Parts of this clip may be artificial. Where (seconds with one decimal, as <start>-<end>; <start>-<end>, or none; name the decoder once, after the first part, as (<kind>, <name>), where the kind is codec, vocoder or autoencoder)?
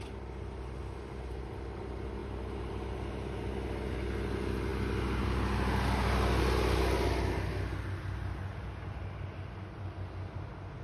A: none